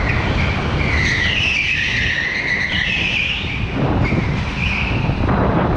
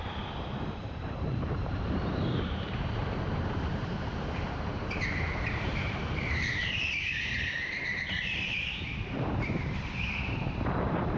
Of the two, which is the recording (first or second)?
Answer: first